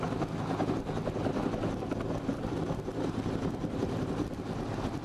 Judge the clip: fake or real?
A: real